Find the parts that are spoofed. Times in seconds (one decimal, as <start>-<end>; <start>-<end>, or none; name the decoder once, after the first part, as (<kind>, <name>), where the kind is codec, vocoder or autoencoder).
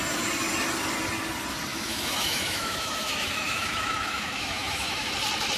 1.7-5.1 (autoencoder, DAC-VAE)